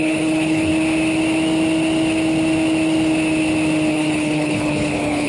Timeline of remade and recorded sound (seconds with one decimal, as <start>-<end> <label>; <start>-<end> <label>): 0.0-0.7 remade; 0.7-3.9 recorded; 3.9-5.3 remade